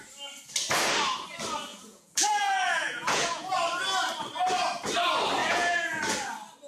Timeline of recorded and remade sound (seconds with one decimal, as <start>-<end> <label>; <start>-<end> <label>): 0.0-1.7 recorded; 1.7-3.5 remade; 3.5-5.4 recorded; 5.4-6.0 remade; 6.0-6.7 recorded